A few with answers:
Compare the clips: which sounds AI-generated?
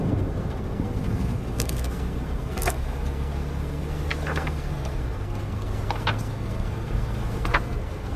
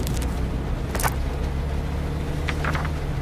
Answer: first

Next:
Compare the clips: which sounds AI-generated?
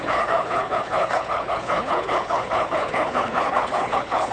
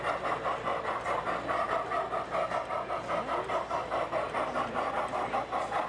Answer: first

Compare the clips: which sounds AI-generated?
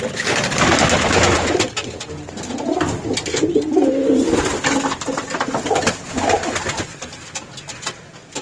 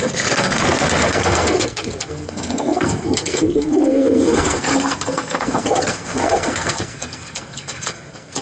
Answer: second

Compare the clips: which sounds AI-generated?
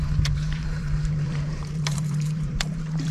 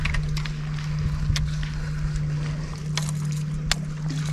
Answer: first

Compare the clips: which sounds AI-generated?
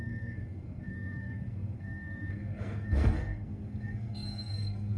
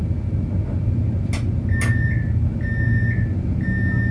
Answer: first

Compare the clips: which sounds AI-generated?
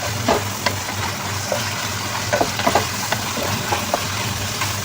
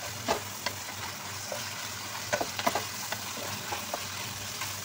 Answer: first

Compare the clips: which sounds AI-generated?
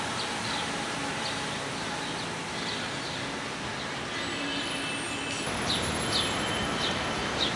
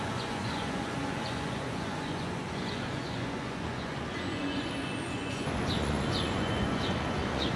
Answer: second